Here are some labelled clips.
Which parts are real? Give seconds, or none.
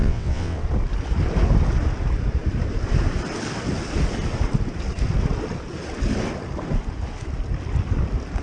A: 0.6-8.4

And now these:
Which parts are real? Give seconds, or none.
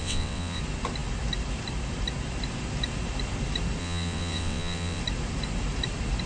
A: 0.6-3.8; 5.0-6.3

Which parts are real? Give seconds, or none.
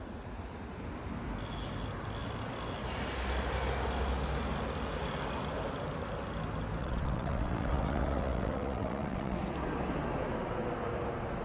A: 0.0-6.8; 9.4-11.4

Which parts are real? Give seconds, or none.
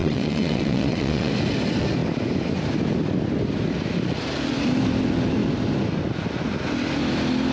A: 1.3-7.5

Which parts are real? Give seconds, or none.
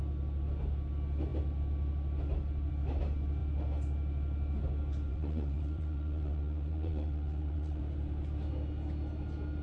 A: 0.0-5.1; 7.8-9.6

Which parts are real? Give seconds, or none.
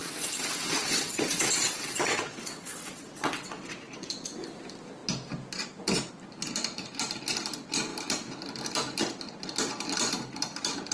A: 4.1-10.9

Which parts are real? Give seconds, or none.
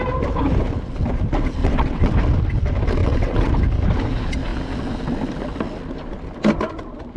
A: 0.0-1.6; 2.1-3.0; 3.5-7.2